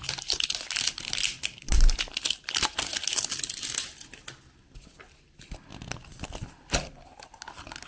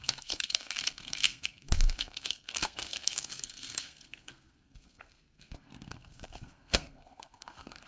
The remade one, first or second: second